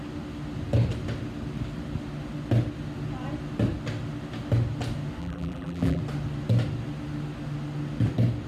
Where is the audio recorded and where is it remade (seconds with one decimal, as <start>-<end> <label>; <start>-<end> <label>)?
0.0-5.2 recorded; 5.2-6.0 remade; 6.0-8.5 recorded